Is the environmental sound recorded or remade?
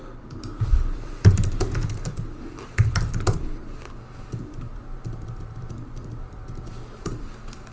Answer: remade